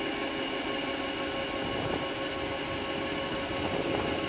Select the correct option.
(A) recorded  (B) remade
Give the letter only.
A